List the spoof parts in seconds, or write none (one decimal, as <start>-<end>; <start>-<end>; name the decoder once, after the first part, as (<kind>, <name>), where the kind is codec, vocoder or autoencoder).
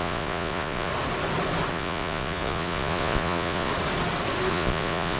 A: 0.0-0.9 (vocoder, Vocos); 1.7-3.7; 4.5-5.2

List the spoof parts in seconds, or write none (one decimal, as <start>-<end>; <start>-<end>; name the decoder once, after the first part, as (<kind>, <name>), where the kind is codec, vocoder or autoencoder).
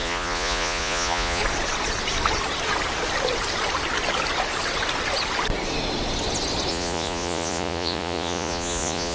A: 0.0-1.4 (vocoder, Vocos); 6.7-9.1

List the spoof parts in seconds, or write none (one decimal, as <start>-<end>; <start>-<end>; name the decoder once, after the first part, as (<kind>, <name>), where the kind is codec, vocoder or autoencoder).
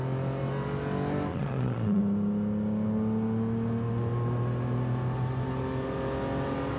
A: 1.3-2.0 (vocoder, Vocos)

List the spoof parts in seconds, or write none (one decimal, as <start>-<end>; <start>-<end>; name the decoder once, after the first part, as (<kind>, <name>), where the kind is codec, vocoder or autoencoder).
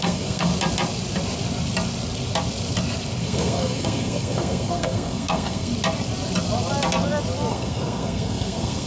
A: 0.0-0.5 (codec, SNAC); 3.2-5.7; 7.5-8.9